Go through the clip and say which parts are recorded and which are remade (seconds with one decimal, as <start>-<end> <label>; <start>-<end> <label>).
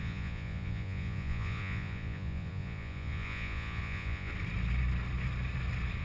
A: 0.0-4.3 remade; 4.3-6.0 recorded